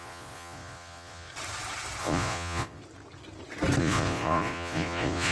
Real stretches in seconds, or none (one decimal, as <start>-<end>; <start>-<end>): 1.3-2.0; 2.8-3.8

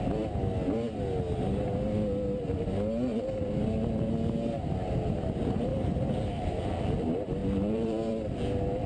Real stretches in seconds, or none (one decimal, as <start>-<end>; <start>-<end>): 0.0-3.1; 4.1-5.7; 6.8-7.4; 8.1-8.9

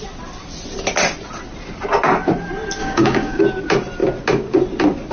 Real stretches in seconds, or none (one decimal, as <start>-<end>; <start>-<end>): 0.0-2.8; 3.4-5.1

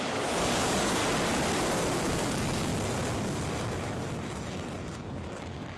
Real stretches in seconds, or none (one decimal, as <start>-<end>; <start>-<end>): 1.0-2.0; 2.7-5.1

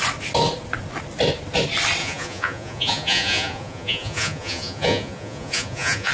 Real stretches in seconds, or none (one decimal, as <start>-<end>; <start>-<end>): 0.0-2.0

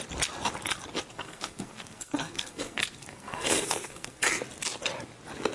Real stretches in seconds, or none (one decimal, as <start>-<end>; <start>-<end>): 0.0-1.1; 4.4-5.5